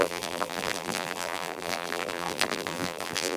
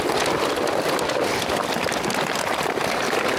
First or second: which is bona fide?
second